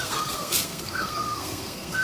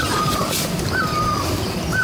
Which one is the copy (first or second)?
first